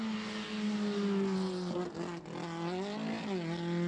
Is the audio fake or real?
real